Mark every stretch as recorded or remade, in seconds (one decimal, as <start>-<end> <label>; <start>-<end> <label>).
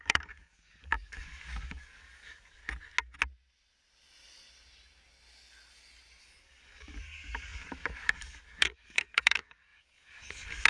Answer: 0.0-2.6 remade; 2.6-6.2 recorded; 6.2-10.7 remade